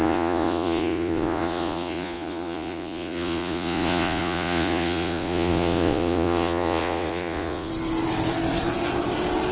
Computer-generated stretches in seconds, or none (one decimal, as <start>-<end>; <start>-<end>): 0.0-7.7